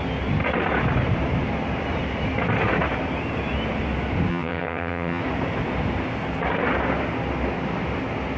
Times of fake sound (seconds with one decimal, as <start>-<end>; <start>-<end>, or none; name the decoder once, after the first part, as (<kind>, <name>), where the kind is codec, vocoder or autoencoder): 4.3-5.2 (vocoder, HiFi-GAN)